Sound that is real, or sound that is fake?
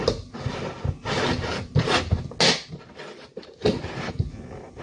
real